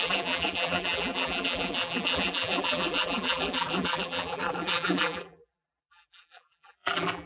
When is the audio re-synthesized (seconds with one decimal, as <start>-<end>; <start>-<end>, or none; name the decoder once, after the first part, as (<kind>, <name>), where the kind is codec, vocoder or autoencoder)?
0.0-7.3 (vocoder, BigVGAN v2)